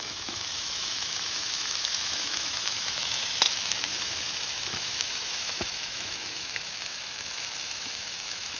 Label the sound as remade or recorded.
remade